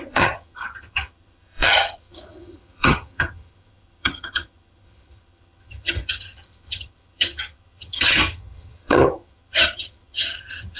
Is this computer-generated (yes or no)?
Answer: yes